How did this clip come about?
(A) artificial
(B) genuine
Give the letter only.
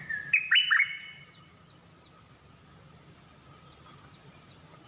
B